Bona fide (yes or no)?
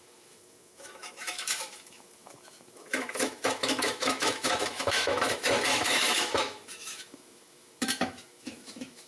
no